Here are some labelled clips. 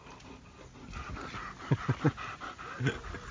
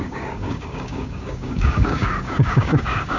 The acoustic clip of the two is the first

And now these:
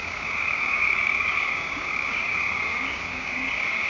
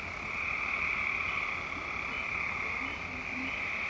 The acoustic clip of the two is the second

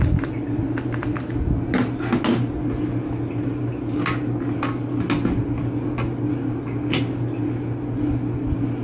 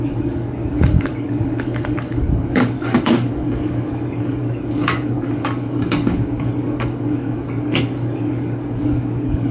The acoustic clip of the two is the first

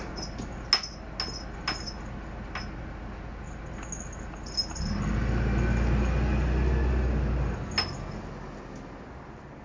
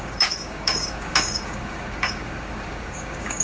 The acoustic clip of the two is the first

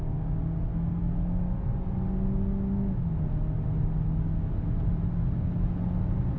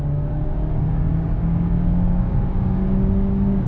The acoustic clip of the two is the first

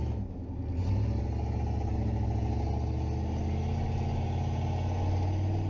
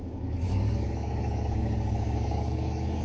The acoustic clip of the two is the first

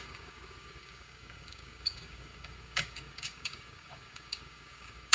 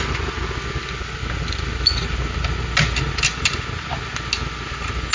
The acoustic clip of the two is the second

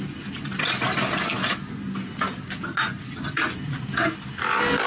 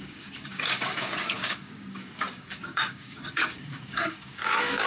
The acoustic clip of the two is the first